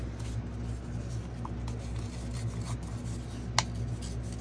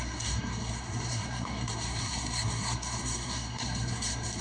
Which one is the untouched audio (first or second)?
first